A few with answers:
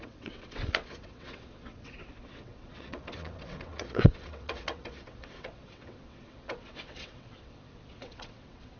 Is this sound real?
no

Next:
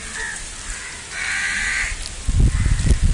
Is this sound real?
yes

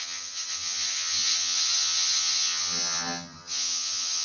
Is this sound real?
no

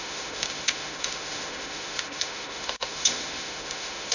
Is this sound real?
no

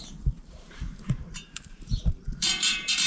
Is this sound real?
no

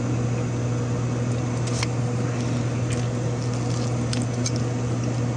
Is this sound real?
yes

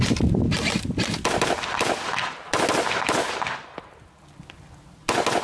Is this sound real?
yes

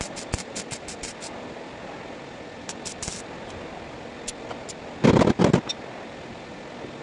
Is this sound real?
yes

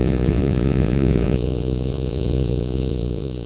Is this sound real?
no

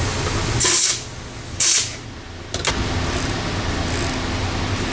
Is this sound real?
yes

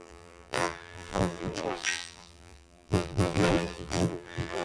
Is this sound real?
no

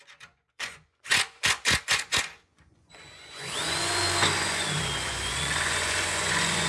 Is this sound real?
no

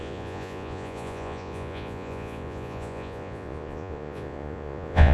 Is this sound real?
no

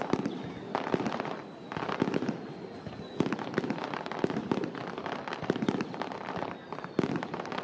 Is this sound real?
yes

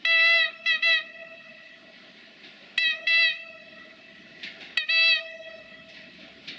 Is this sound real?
yes